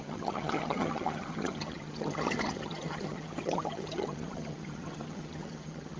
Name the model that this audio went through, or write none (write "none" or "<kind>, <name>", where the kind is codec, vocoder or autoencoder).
vocoder, HiFi-GAN